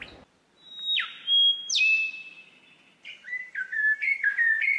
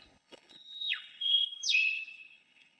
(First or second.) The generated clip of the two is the second